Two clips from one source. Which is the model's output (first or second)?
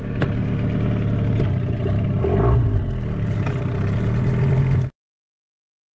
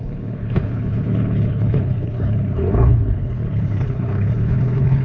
second